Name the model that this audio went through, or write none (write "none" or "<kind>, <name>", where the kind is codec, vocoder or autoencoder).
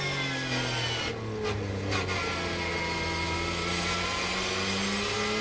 none